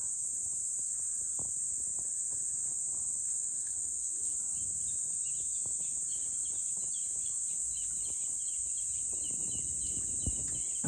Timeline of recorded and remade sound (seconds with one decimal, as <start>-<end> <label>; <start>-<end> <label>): 0.0-3.3 recorded; 3.3-4.3 remade; 4.3-10.9 recorded